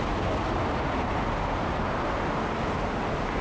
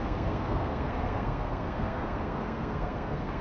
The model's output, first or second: second